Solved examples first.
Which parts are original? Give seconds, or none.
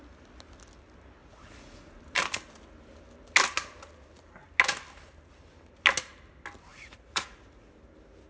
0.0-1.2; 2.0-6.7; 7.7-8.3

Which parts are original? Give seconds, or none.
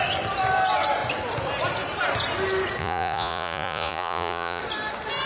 0.0-2.8; 4.6-5.3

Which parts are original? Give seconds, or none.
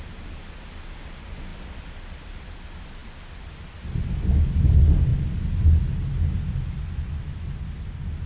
0.0-8.3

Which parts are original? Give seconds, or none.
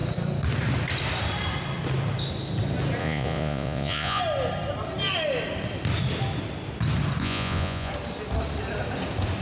0.0-3.0; 4.2-7.2; 7.9-9.4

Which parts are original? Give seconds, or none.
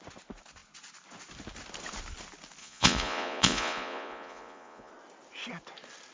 0.0-2.6; 4.9-6.1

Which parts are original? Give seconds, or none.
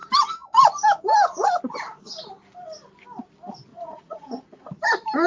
0.0-3.7; 4.7-5.3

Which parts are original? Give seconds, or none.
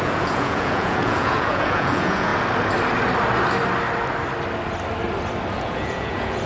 2.3-5.5